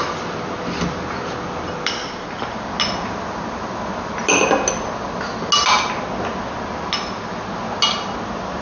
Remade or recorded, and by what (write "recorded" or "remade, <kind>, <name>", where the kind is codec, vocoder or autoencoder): recorded